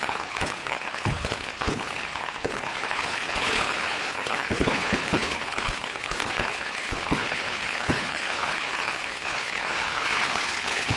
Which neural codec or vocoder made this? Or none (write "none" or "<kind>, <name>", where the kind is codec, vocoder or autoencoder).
codec, HILCodec